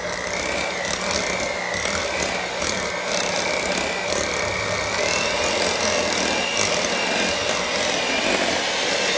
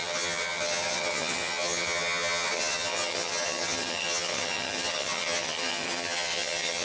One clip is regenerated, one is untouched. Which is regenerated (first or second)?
second